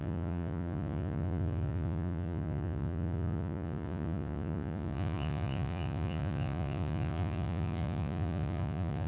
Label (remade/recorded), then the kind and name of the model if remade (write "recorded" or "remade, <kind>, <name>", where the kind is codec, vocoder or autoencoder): remade, vocoder, Vocos